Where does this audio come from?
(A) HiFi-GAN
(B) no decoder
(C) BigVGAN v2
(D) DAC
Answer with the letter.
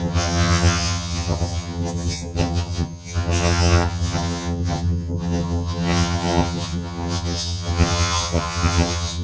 A